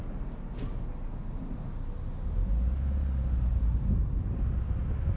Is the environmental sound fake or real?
real